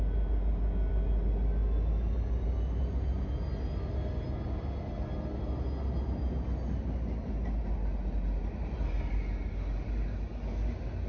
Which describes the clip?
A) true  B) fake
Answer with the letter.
A